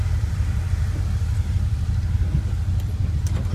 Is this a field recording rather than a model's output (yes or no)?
no